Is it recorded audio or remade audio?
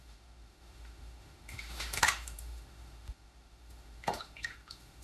remade